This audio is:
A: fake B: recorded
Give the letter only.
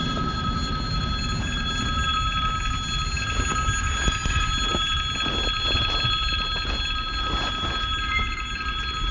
B